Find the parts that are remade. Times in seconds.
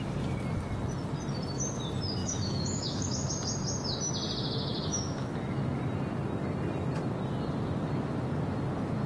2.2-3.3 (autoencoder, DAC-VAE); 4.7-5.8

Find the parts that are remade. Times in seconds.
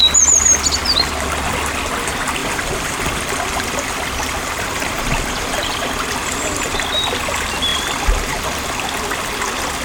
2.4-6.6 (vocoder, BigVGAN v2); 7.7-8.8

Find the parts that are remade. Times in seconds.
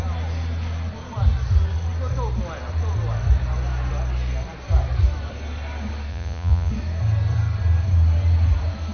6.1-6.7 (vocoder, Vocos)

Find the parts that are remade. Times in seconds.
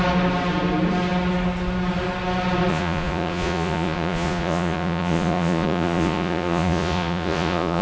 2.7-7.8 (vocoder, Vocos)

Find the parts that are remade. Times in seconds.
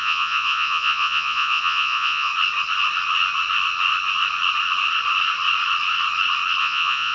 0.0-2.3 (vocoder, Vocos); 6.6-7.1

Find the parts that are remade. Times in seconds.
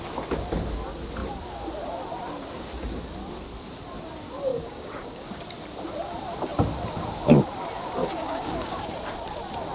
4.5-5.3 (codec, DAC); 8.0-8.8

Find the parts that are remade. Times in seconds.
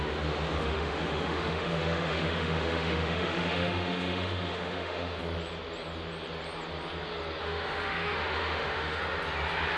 0.6-5.2 (autoencoder, DAC-VAE); 7.4-9.0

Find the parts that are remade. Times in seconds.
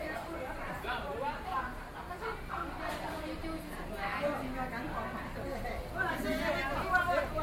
0.0-3.4 (vocoder, BigVGAN v2); 6.0-7.4